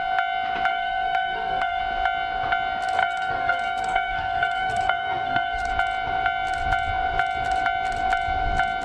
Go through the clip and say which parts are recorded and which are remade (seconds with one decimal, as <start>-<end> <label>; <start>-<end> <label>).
0.0-0.7 recorded; 0.7-1.8 remade; 1.8-3.0 recorded; 3.0-5.7 remade; 5.7-8.8 recorded